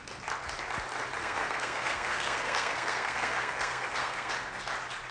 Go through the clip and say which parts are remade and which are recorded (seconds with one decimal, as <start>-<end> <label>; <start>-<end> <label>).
0.0-1.2 recorded; 1.2-4.3 remade; 4.3-5.1 recorded